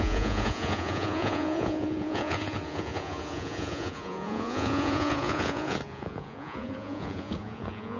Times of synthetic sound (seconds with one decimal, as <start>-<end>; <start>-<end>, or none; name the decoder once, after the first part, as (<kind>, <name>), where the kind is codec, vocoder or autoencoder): 0.0-8.0 (vocoder, Vocos)